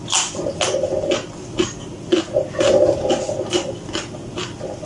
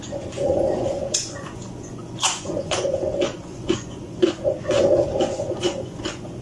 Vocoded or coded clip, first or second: second